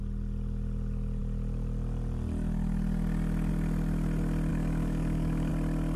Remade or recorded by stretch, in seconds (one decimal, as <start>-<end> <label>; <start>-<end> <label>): 0.0-4.5 recorded; 4.5-5.5 remade; 5.5-6.0 recorded